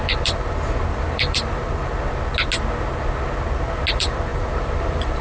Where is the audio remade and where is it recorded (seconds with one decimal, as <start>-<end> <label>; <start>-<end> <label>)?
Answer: 0.0-1.8 remade; 1.8-3.9 recorded; 3.9-5.2 remade